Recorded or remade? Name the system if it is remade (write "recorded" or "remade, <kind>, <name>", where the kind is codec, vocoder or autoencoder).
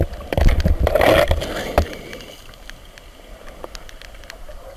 recorded